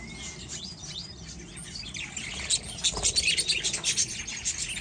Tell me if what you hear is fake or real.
real